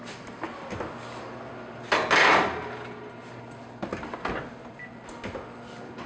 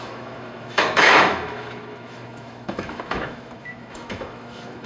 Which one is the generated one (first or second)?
second